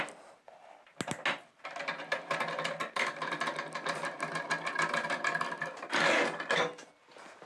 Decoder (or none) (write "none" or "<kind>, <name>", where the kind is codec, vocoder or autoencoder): none